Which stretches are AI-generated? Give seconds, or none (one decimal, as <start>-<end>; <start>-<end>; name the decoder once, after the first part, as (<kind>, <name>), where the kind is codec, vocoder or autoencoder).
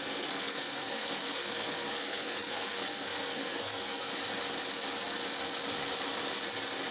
0.0-4.1 (codec, SNAC)